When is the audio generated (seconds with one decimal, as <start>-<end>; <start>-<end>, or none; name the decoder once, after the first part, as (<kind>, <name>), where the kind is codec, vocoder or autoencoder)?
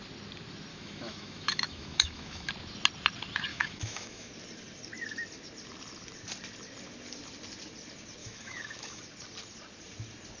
0.7-2.5 (autoencoder, DAC-VAE); 3.5-4.3; 8.2-9.0